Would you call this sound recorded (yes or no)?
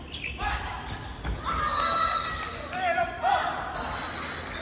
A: yes